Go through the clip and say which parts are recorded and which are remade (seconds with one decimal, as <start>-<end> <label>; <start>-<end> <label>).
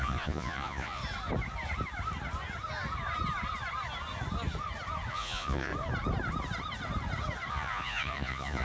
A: 0.0-1.0 remade; 1.0-5.1 recorded; 5.1-5.7 remade; 5.7-7.5 recorded; 7.5-8.6 remade